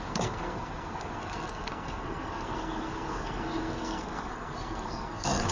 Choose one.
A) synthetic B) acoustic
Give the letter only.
A